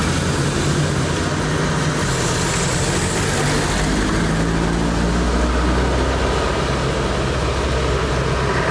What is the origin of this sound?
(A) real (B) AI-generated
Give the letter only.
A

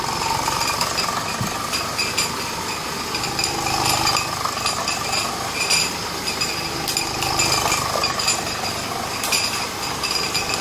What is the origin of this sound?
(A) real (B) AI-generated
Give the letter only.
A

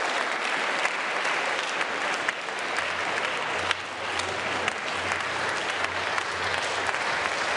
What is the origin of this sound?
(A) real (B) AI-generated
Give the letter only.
A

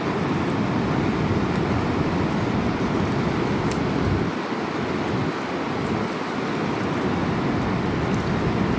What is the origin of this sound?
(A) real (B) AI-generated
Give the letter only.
A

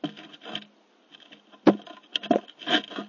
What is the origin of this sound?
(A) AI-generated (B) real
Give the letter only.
B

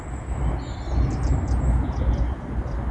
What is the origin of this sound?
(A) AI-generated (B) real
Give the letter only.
B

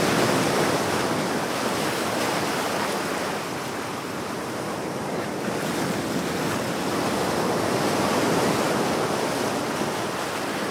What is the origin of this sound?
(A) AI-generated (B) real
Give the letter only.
B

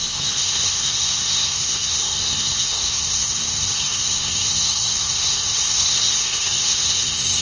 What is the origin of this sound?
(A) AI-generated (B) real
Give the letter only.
A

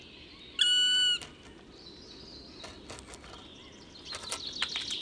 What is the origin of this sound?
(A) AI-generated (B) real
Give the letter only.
B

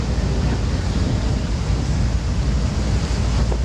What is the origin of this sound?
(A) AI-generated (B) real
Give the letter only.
B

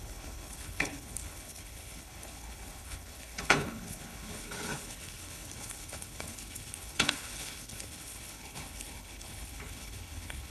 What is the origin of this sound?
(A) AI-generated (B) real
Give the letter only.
A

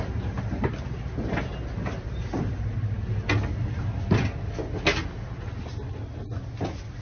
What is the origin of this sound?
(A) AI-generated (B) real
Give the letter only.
B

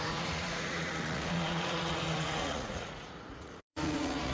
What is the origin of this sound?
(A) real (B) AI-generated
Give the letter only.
B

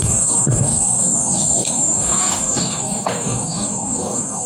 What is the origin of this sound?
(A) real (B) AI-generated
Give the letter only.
B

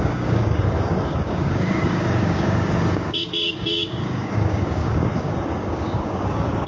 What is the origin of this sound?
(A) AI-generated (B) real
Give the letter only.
A